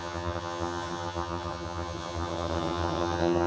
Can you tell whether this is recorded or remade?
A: remade